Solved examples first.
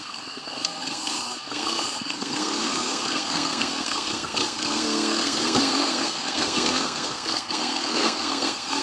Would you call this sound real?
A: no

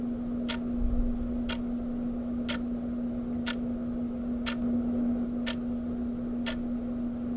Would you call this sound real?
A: yes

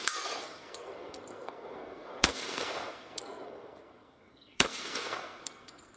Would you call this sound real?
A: no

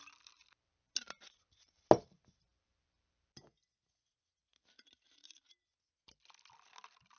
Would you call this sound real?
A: yes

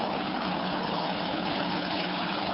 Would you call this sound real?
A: no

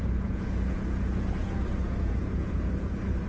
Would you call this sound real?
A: no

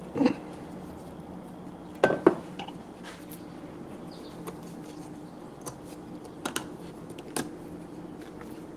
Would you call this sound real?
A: yes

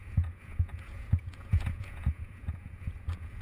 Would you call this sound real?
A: no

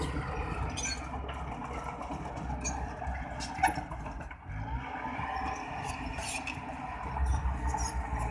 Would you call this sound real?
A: yes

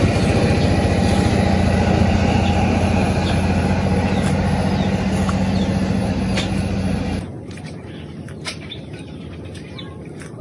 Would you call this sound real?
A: yes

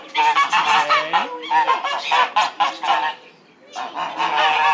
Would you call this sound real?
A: yes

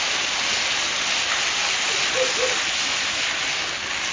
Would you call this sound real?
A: yes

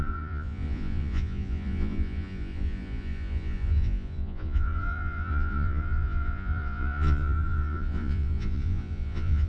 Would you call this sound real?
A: no